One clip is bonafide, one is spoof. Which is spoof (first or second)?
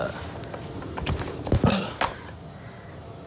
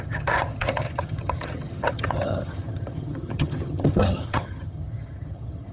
second